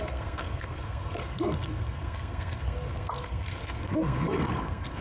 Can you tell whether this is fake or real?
fake